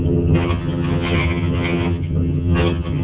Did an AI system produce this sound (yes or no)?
yes